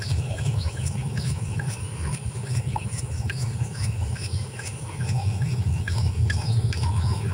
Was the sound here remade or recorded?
remade